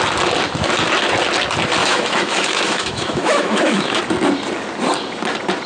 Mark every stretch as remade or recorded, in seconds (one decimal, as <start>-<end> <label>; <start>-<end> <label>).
0.0-1.8 recorded; 1.8-4.0 remade; 4.0-5.7 recorded